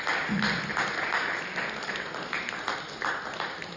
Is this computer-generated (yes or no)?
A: no